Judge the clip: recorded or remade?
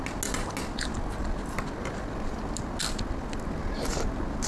recorded